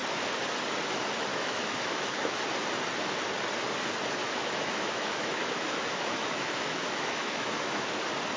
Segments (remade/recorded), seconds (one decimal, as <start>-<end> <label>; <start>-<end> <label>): 0.0-1.3 recorded; 1.3-2.4 remade; 2.4-4.2 recorded; 4.2-8.0 remade; 8.0-8.4 recorded